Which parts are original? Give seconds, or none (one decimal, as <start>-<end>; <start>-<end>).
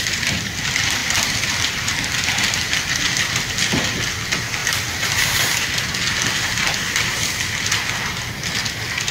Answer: 0.0-9.1